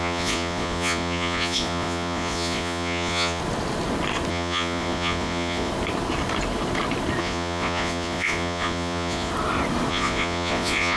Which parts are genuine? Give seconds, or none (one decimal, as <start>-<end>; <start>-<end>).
3.4-4.3; 5.7-7.2; 9.3-9.9